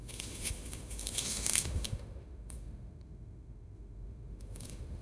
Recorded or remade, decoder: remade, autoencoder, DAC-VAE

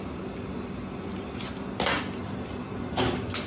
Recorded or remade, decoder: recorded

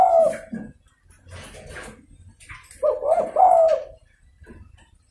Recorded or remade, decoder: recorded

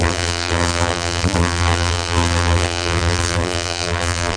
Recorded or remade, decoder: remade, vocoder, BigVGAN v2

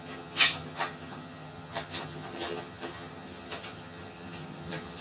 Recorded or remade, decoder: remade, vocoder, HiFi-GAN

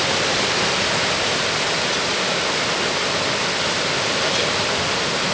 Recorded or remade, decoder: recorded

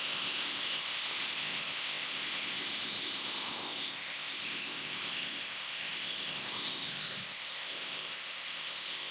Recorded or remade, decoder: remade, codec, ZipCodec